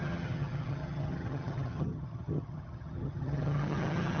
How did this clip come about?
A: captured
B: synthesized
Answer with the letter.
B